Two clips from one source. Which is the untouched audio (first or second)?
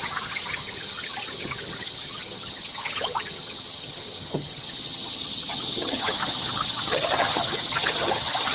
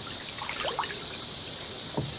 second